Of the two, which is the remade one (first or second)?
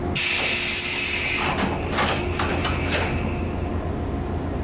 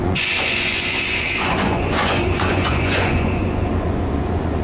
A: second